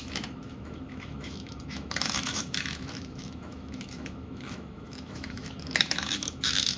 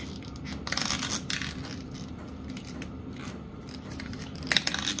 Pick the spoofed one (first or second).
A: first